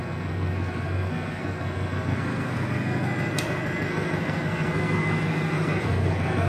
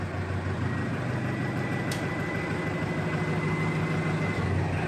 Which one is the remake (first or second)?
first